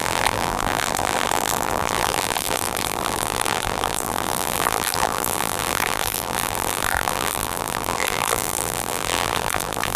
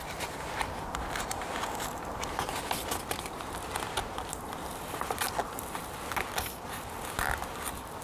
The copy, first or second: first